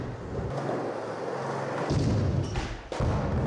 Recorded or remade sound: recorded